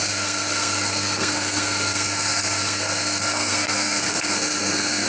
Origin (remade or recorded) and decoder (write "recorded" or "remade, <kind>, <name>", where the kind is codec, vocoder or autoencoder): remade, codec, SNAC